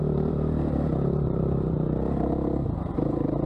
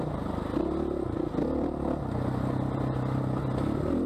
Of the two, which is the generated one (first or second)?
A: first